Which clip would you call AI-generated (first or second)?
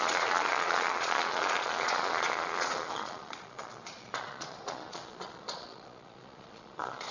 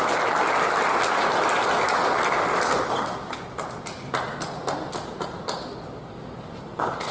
first